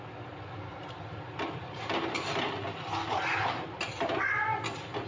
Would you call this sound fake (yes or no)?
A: no